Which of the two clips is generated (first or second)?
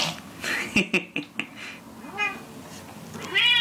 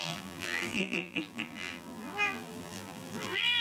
second